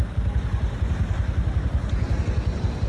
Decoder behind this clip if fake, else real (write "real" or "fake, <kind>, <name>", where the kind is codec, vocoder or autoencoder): real